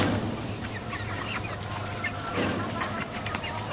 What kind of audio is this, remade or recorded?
recorded